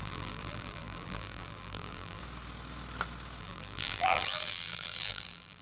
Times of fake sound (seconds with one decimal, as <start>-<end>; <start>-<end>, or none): 0.0-2.2; 3.4-5.6